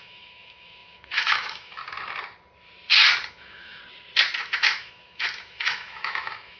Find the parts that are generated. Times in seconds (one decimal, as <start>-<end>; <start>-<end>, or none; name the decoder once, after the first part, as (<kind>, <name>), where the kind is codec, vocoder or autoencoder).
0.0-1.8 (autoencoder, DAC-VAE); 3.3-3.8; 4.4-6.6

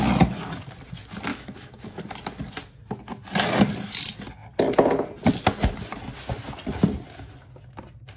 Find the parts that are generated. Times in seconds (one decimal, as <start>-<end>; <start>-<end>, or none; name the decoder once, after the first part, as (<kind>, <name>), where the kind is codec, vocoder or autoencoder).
1.3-2.0 (autoencoder, DAC-VAE)

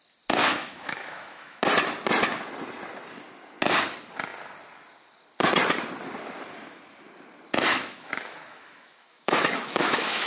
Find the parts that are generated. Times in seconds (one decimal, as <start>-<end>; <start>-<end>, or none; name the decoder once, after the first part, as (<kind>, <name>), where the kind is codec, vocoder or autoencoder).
0.4-1.6 (autoencoder, DAC-VAE); 7.7-10.3

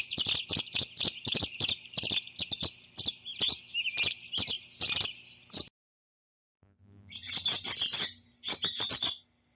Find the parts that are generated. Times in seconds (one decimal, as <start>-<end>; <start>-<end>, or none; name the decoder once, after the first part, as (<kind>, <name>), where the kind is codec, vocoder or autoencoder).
none

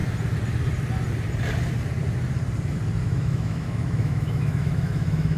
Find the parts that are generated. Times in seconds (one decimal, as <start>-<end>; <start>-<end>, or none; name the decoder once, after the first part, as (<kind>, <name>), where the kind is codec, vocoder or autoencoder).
3.0-5.4 (autoencoder, DAC-VAE)